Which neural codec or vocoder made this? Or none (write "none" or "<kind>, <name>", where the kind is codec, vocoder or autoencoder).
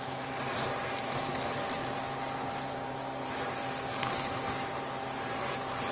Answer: vocoder, BigVGAN v2